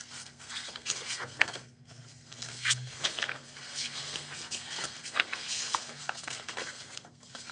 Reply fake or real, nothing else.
fake